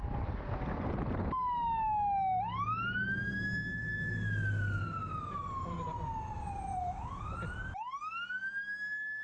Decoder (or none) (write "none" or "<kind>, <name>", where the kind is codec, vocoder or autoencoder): none